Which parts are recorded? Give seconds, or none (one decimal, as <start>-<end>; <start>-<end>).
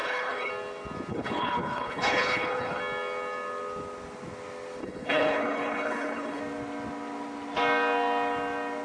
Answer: 0.5-1.1; 2.8-4.8; 6.4-8.8